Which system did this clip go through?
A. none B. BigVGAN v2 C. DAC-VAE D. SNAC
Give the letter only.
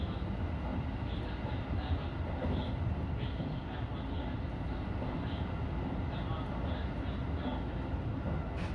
A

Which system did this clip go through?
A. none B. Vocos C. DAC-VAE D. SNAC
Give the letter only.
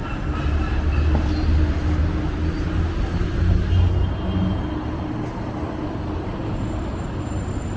A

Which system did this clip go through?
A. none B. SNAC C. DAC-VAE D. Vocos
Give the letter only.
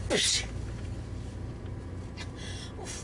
A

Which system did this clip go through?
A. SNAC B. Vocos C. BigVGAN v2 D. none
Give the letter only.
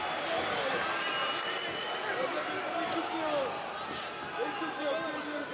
D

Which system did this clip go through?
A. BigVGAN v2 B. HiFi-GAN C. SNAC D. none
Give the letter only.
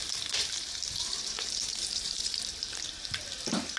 A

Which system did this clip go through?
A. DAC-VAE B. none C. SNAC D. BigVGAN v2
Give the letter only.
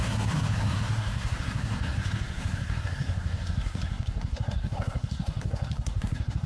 C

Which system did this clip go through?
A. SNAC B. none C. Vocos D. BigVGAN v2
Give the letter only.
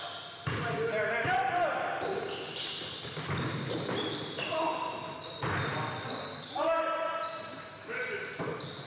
B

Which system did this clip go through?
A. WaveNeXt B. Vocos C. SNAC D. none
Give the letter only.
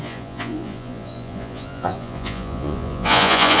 B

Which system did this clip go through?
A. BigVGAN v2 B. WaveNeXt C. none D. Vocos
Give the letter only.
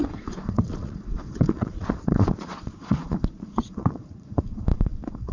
D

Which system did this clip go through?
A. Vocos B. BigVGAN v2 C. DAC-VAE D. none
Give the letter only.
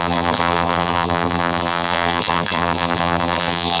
B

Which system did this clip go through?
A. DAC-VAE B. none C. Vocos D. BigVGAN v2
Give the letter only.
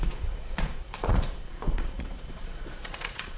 C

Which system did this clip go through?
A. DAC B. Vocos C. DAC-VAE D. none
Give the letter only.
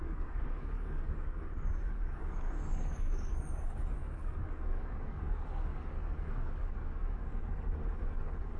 A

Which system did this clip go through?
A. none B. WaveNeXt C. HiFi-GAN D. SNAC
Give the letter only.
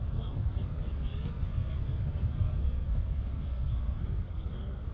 D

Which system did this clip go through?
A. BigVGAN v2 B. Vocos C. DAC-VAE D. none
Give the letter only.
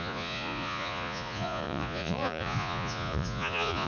B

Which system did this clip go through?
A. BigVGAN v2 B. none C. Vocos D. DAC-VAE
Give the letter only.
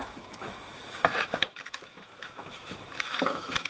D